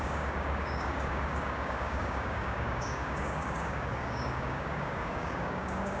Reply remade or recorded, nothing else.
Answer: remade